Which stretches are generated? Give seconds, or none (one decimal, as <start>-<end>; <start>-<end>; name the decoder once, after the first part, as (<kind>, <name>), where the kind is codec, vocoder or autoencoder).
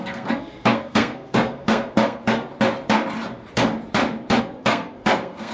0.0-2.5 (codec, SNAC); 4.4-5.5